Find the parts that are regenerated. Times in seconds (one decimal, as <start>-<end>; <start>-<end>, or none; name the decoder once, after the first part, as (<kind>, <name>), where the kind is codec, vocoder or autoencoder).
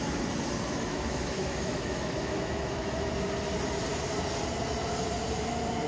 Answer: 0.9-3.1 (autoencoder, DAC-VAE)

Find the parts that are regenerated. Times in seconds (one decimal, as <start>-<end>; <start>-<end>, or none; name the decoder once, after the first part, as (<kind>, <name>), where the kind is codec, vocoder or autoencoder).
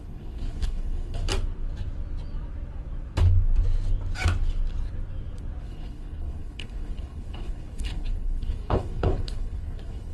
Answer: 0.0-1.2 (codec, HILCodec); 5.6-10.1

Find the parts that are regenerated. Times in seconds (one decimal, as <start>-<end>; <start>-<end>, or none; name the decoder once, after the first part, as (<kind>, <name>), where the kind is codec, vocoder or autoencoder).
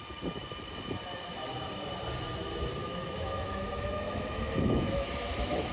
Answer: 2.8-5.7 (autoencoder, DAC-VAE)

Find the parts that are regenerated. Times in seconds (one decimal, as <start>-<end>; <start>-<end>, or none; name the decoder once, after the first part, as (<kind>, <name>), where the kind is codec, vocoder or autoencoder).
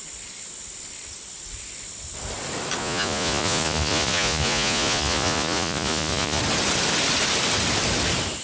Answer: 2.8-6.4 (vocoder, Vocos)